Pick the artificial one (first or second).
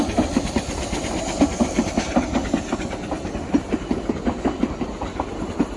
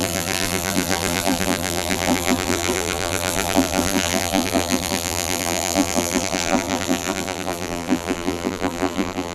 second